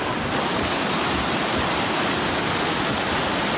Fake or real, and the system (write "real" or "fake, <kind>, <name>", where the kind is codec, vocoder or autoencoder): real